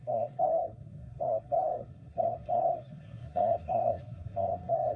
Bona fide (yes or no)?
no